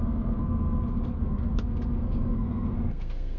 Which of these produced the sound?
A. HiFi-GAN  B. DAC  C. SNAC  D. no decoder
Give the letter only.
C